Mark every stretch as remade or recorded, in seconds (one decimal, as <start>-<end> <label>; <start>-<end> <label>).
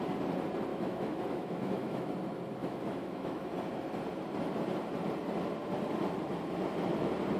0.0-0.7 recorded; 0.7-2.1 remade; 2.1-2.6 recorded; 2.6-3.5 remade; 3.5-7.4 recorded